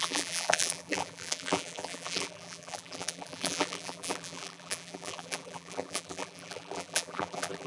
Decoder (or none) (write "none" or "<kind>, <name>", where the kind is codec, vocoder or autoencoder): vocoder, BigVGAN v2